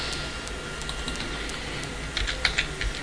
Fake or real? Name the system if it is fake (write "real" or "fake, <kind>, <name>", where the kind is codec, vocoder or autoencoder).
real